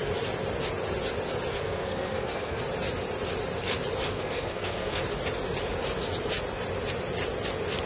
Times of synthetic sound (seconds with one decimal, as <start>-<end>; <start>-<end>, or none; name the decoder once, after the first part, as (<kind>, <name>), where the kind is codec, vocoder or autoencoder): 1.5-2.6 (codec, SNAC); 4.1-5.0